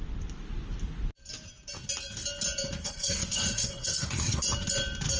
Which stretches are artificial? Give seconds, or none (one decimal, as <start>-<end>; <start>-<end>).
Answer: 2.8-4.4